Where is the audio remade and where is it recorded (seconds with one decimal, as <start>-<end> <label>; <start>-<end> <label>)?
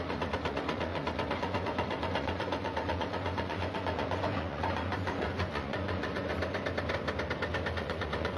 0.0-6.3 remade; 6.3-7.7 recorded; 7.7-8.4 remade